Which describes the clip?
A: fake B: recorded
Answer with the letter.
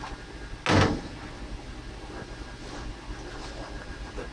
B